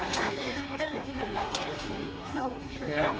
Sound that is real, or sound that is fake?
fake